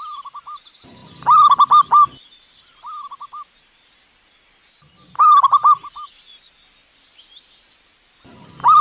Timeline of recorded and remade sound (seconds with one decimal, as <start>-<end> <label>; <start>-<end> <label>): 0.0-8.8 recorded